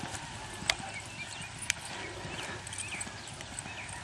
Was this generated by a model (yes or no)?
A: no